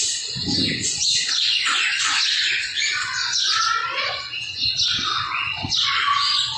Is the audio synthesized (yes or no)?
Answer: yes